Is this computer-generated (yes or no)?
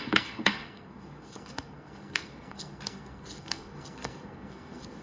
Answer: yes